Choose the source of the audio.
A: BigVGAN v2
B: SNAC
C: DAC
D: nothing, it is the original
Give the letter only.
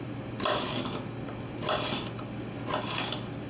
D